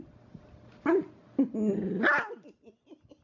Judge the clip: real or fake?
real